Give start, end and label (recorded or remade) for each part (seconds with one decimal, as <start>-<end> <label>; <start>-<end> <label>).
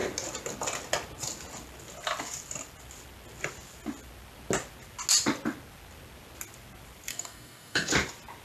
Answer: 0.0-7.1 recorded; 7.1-7.9 remade; 7.9-8.4 recorded